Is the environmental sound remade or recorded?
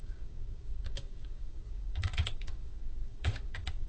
remade